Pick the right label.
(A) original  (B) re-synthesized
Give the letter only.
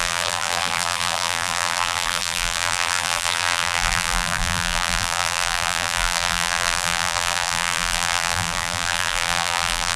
B